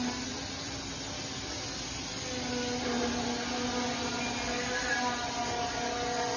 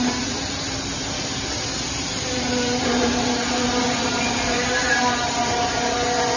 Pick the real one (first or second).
first